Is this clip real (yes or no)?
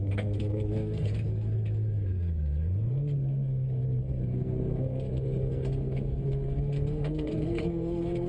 no